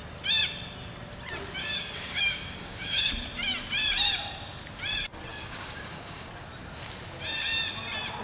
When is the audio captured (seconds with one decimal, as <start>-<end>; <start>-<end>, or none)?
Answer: 0.0-1.6; 3.1-5.3; 6.3-8.2